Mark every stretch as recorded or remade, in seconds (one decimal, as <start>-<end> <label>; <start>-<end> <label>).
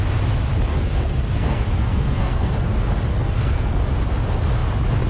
0.0-0.7 recorded; 0.7-2.5 remade; 2.5-3.1 recorded; 3.1-3.8 remade; 3.8-5.1 recorded